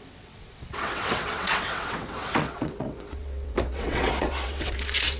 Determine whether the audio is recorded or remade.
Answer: remade